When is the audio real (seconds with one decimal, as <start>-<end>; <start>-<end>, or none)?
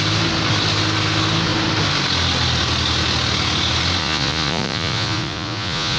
0.0-4.0